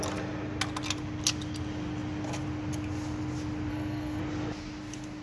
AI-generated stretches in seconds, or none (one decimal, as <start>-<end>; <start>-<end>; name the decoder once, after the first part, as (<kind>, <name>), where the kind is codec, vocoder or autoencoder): 3.7-4.2 (codec, SNAC)